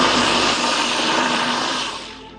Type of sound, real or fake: fake